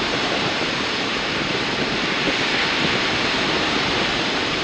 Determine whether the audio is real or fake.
fake